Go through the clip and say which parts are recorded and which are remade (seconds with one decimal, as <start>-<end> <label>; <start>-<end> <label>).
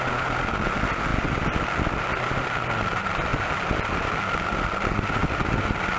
0.0-1.1 recorded; 1.1-2.3 remade; 2.3-5.2 recorded; 5.2-6.0 remade